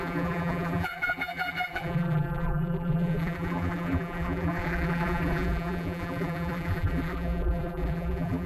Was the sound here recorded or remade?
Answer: remade